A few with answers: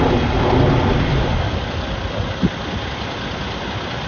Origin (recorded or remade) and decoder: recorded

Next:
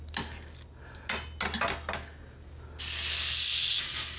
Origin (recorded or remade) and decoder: recorded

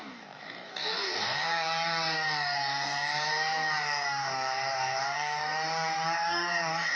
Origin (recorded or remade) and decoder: remade, codec, DAC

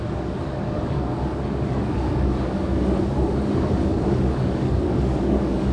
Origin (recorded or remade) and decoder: remade, codec, DAC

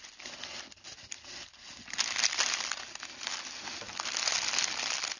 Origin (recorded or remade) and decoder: recorded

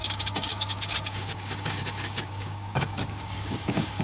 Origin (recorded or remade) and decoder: remade, codec, DAC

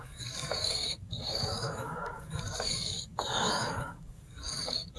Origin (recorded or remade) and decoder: remade, codec, DAC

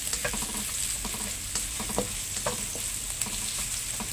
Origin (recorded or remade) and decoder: recorded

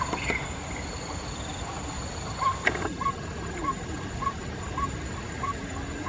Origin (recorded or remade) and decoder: recorded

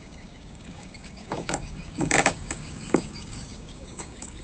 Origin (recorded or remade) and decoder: remade, codec, DAC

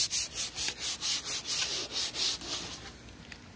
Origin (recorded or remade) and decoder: recorded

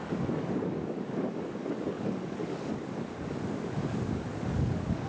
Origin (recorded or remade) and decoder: remade, codec, DAC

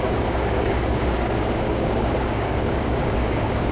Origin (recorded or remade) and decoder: remade, codec, DAC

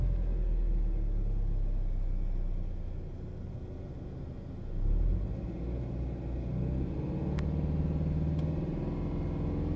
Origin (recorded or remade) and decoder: recorded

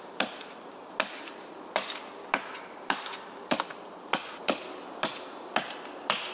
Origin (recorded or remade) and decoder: recorded